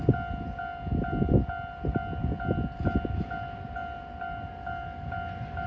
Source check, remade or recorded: recorded